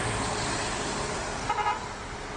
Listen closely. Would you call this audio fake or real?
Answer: real